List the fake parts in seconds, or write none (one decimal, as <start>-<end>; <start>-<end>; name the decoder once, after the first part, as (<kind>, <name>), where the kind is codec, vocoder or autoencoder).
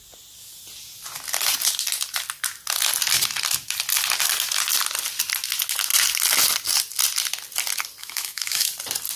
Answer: 8.0-8.7 (autoencoder, DAC-VAE)